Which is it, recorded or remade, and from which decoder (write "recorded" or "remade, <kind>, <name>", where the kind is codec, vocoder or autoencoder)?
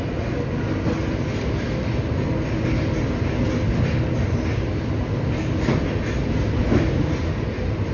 recorded